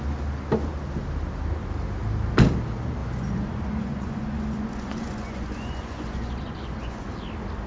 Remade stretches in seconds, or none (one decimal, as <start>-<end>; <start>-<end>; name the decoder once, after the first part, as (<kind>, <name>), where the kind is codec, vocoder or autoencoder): 3.0-7.1 (vocoder, Vocos)